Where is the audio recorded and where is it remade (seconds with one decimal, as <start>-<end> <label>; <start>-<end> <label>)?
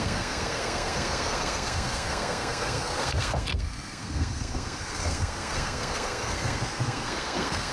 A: 0.0-7.7 remade